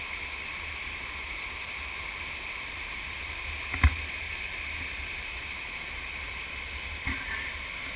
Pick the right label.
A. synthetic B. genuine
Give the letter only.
B